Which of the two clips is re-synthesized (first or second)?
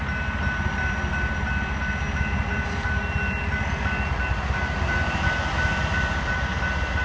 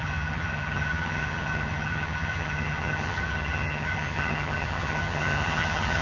second